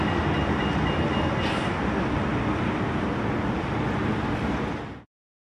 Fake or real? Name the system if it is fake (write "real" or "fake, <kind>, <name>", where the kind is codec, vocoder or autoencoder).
real